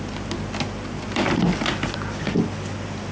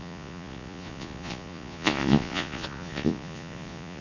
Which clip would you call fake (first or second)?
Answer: second